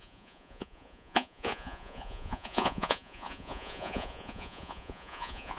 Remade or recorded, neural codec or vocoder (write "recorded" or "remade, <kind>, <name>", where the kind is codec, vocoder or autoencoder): remade, vocoder, Vocos